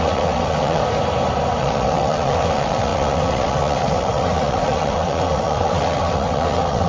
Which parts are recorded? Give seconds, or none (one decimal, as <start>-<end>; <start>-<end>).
0.8-1.6